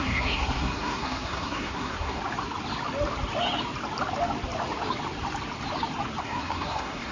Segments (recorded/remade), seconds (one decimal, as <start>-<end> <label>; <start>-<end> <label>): 0.0-2.2 remade; 2.2-6.2 recorded; 6.2-7.1 remade